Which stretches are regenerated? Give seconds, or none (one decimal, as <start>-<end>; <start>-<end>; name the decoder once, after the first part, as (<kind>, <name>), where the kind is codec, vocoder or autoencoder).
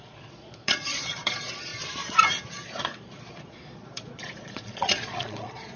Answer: 0.0-1.7 (vocoder, Vocos); 2.5-5.8